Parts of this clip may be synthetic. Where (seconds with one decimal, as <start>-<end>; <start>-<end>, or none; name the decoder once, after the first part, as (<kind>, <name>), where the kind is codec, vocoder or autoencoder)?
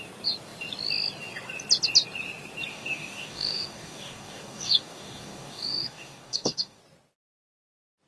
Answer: 2.7-6.8 (codec, DAC)